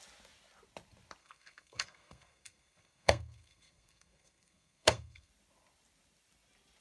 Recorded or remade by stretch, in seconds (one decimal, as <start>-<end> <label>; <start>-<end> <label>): 0.0-1.2 recorded; 1.2-5.3 remade; 5.3-6.8 recorded